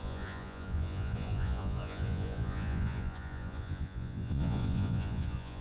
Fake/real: fake